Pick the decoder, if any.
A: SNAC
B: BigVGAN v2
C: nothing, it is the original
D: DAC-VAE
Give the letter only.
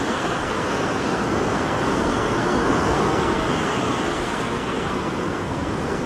A